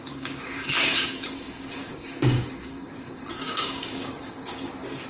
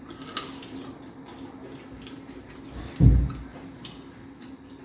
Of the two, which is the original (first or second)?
second